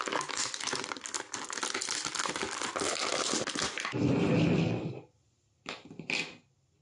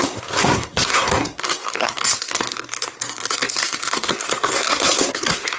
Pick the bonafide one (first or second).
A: first